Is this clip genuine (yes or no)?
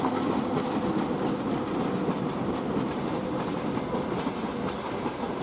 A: yes